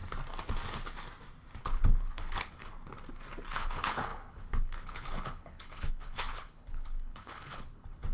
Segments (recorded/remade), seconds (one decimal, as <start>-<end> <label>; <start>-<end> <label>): 0.0-1.6 recorded; 1.6-2.7 remade; 2.7-3.5 recorded; 3.5-8.1 remade